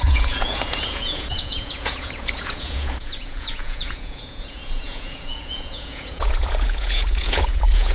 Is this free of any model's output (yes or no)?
no